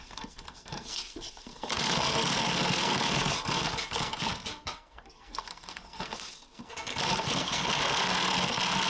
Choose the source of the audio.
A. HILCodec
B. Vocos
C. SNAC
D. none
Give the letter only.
C